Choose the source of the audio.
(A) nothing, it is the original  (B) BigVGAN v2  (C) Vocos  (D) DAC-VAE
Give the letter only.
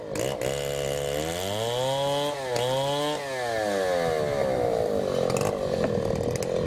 A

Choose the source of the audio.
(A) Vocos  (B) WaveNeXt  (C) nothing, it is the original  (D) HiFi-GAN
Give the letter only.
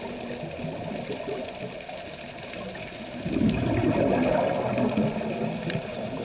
C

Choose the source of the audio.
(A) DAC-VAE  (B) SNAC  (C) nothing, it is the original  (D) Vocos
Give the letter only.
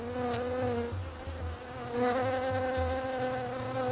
C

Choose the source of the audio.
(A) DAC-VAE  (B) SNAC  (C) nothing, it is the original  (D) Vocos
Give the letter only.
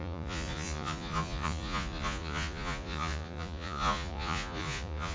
D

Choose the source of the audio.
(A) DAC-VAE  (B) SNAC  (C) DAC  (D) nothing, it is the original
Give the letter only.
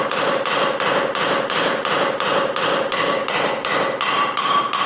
D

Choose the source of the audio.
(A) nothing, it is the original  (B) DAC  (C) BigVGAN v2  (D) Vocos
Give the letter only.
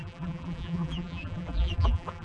C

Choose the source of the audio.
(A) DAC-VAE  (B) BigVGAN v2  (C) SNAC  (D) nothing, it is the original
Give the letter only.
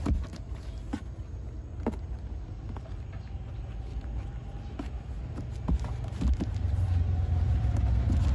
D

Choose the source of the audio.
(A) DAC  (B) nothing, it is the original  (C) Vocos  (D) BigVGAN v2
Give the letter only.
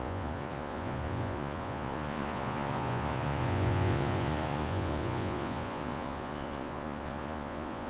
C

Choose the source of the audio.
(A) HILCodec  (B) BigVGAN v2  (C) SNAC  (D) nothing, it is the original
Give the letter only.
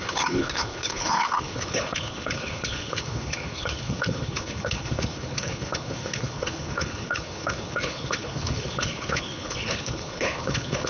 A